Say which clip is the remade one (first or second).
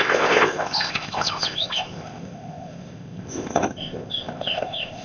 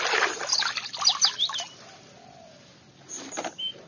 first